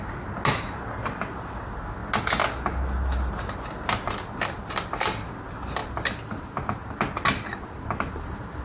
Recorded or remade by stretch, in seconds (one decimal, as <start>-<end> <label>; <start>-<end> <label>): 0.0-8.6 recorded